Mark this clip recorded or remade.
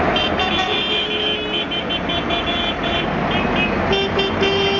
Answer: recorded